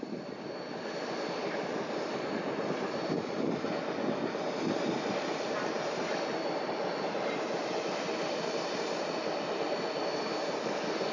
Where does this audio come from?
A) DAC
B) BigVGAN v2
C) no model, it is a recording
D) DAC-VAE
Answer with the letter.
C